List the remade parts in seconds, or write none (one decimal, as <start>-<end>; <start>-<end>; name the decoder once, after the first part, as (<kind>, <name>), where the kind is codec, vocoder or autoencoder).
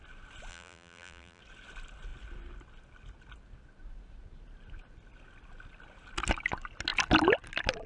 0.5-1.4 (vocoder, BigVGAN v2)